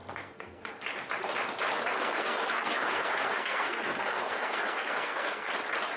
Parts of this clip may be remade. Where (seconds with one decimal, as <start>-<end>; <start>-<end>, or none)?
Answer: 0.0-0.7; 1.9-5.5